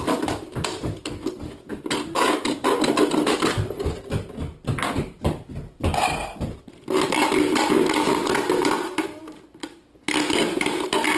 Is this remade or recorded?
recorded